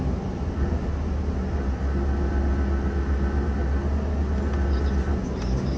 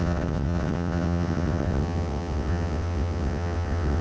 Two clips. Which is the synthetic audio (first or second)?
second